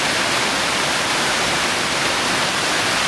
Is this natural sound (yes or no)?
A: yes